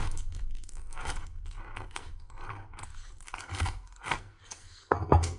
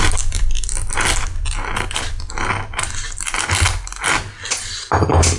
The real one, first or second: second